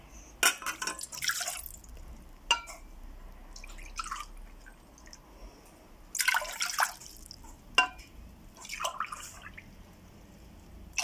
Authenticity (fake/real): real